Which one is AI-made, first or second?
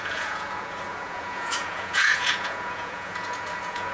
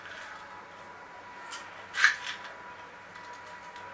first